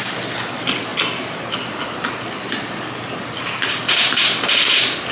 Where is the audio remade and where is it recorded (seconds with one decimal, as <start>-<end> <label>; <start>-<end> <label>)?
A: 0.0-5.1 recorded